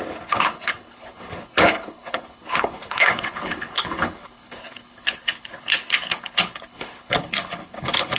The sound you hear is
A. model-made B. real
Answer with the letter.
A